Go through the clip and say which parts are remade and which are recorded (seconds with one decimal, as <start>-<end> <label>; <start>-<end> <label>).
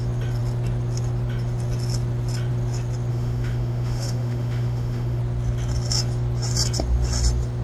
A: 0.0-3.1 recorded; 3.1-5.2 remade; 5.2-7.6 recorded